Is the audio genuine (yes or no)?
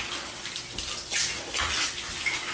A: yes